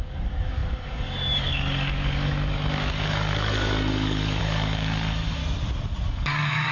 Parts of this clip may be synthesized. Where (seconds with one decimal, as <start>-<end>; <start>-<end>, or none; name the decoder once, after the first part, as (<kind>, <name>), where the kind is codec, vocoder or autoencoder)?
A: 0.0-5.4 (codec, DAC); 6.1-6.7